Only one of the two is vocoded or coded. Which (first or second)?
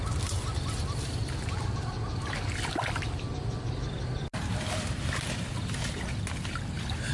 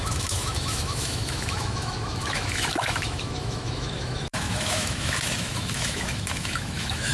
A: second